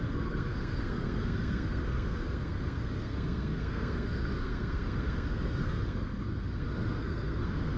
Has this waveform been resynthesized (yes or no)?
yes